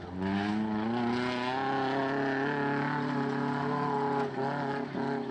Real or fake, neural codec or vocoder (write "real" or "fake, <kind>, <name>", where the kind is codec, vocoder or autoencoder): real